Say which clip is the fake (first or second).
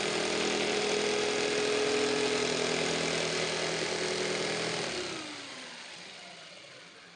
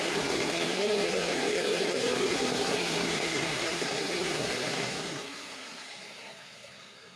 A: second